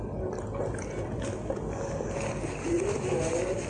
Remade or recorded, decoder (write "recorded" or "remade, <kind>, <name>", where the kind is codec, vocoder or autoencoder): recorded